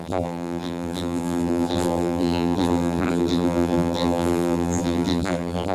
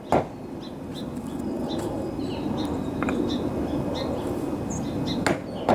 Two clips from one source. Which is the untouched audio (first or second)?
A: second